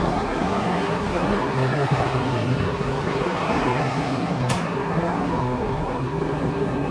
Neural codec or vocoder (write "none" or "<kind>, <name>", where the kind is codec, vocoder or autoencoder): codec, SNAC